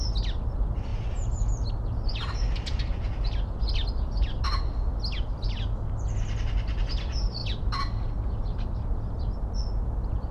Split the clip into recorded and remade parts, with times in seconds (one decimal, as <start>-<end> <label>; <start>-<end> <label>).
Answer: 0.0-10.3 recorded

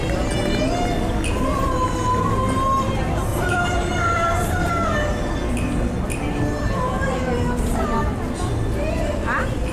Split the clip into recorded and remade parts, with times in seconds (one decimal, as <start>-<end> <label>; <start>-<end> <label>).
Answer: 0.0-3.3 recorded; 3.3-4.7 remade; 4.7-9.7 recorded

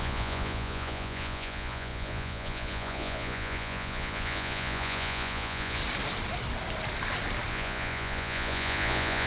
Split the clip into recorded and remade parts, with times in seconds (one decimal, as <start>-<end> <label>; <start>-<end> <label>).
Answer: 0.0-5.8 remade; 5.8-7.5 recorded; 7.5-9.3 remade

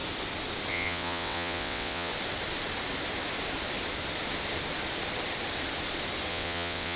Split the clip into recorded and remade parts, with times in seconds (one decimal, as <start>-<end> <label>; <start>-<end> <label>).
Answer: 0.0-0.7 recorded; 0.7-2.1 remade; 2.1-6.3 recorded; 6.3-7.0 remade

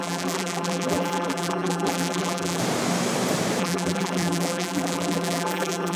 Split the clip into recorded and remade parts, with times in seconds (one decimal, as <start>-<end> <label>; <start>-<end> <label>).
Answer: 0.0-2.6 remade; 2.6-3.6 recorded; 3.6-6.0 remade

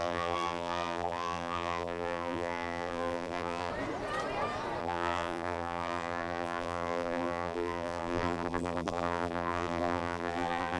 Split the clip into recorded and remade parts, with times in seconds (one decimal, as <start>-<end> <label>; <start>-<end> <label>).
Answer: 0.0-3.7 remade; 3.7-4.8 recorded; 4.8-10.8 remade